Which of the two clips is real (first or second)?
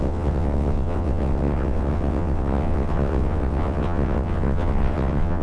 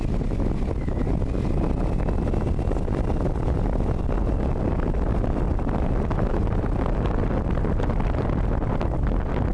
second